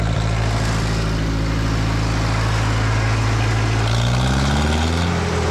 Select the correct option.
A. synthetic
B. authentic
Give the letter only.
B